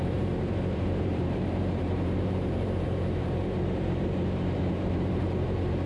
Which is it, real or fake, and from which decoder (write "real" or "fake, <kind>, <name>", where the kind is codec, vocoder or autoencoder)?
fake, vocoder, BigVGAN v2